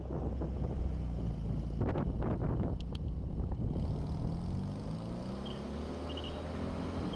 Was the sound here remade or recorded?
recorded